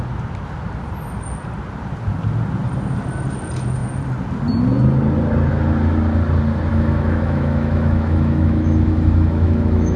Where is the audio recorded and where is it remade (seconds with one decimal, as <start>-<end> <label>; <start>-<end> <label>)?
0.0-6.7 recorded; 6.7-10.0 remade